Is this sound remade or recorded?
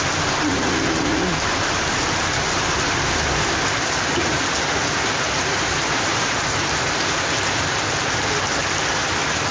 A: recorded